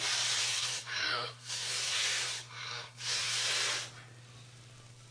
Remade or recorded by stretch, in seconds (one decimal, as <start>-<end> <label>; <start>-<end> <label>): 0.0-0.4 recorded; 0.4-3.5 remade; 3.5-5.1 recorded